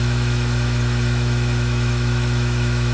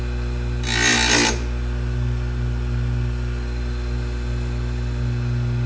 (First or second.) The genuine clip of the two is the second